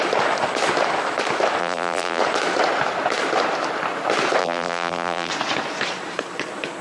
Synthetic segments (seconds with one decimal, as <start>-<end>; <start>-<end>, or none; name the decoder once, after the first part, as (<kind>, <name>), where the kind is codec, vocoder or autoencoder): 1.6-2.2 (vocoder, BigVGAN v2); 4.4-5.3